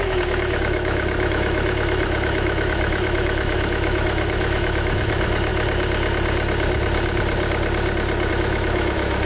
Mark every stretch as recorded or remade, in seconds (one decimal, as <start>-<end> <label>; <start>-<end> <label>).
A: 0.0-5.5 remade; 5.5-8.3 recorded; 8.3-9.3 remade